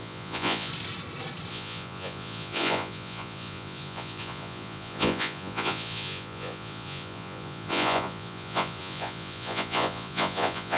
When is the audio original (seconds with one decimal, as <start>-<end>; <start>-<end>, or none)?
0.7-1.5